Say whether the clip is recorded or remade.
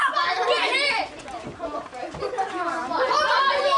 recorded